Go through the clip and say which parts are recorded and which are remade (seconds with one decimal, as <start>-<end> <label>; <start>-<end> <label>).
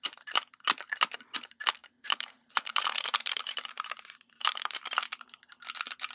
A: 0.0-1.8 recorded; 1.8-5.5 remade; 5.5-6.1 recorded